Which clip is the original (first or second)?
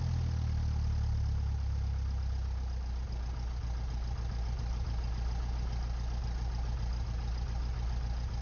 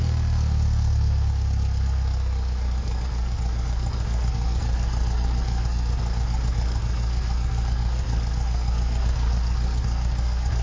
first